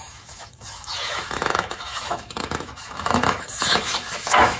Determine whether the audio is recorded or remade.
remade